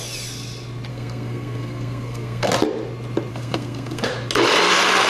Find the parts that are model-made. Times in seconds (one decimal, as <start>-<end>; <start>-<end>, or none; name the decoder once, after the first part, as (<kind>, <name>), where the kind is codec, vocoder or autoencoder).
0.9-2.5 (codec, SNAC); 3.3-4.1

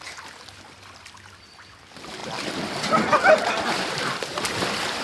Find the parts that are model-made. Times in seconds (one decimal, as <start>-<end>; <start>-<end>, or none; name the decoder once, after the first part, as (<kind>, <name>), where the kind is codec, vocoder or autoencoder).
0.0-2.2 (vocoder, BigVGAN v2); 3.9-5.0